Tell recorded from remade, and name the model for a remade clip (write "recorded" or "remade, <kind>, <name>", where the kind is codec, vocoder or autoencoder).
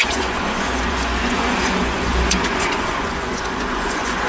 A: remade, vocoder, Vocos